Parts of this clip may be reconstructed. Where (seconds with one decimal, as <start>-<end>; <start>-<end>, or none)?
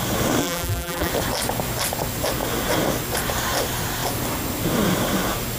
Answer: 0.4-1.1